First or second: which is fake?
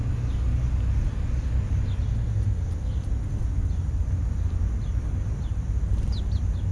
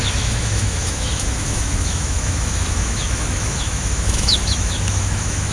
second